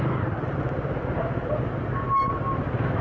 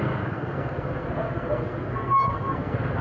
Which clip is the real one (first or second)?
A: first